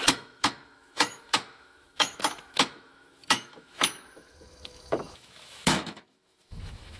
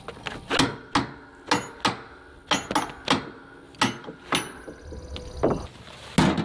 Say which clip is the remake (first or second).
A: first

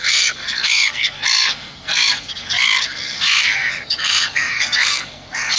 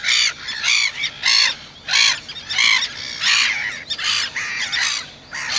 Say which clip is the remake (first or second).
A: first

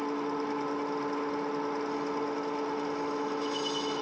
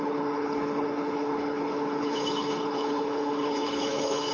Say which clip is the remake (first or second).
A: second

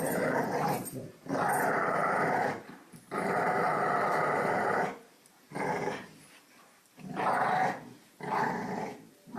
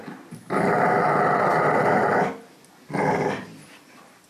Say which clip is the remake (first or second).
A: first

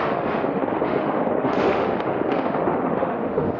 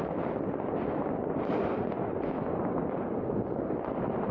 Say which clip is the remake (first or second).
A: first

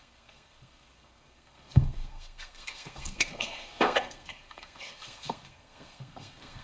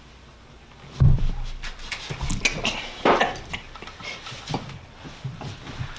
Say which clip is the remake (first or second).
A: first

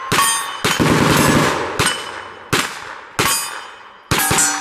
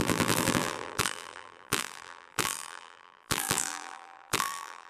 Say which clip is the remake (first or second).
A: second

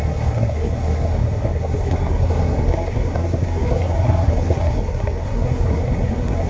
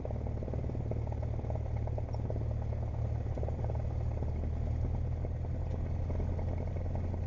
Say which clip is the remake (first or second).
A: first